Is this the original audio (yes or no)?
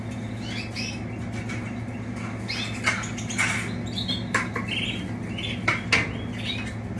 yes